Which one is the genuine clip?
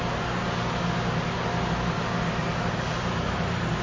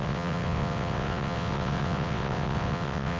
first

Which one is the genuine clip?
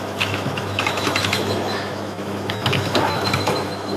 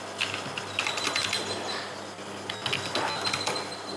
second